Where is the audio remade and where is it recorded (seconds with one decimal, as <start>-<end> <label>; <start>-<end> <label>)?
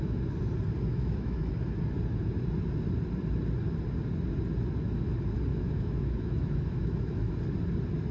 0.0-0.9 recorded; 0.9-1.5 remade; 1.5-5.5 recorded; 5.5-7.3 remade; 7.3-8.1 recorded